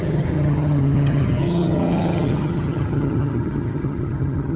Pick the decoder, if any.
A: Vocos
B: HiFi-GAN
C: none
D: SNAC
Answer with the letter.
B